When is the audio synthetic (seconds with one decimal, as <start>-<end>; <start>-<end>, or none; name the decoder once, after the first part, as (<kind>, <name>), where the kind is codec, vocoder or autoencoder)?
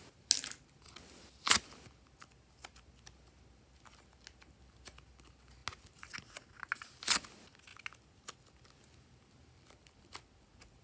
none